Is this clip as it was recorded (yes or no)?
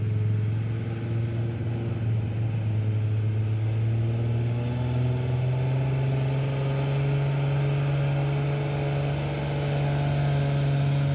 yes